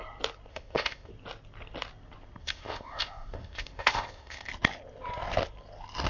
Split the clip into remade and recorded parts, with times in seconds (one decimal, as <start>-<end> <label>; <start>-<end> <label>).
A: 0.0-0.5 recorded; 0.5-1.1 remade; 1.1-2.4 recorded; 2.4-4.5 remade; 4.5-6.1 recorded